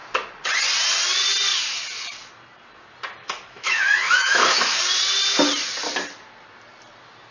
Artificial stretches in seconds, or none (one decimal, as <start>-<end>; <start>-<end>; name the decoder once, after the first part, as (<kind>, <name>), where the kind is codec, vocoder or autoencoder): 3.2-4.8 (autoencoder, DAC-VAE)